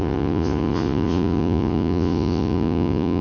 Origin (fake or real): fake